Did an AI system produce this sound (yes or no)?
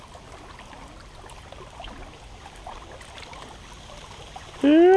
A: no